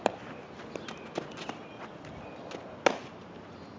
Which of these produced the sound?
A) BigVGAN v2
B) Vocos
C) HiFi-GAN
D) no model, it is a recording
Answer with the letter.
D